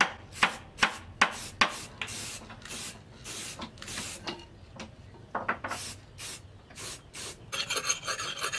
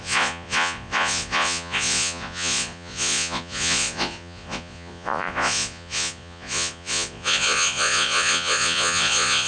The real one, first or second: first